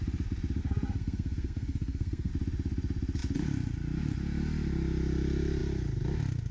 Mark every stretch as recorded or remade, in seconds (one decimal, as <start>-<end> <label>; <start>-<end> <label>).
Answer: 0.0-0.6 recorded; 0.6-2.3 remade; 2.3-6.5 recorded